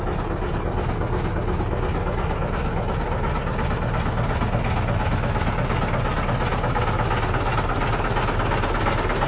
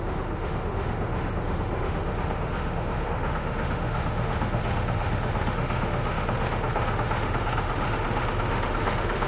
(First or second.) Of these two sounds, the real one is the first